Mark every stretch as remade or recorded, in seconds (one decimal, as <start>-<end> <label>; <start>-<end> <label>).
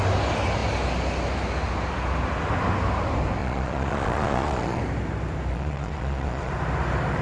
0.0-3.4 recorded; 3.4-4.8 remade; 4.8-5.5 recorded; 5.5-6.5 remade; 6.5-7.2 recorded